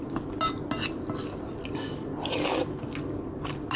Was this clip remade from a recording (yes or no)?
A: no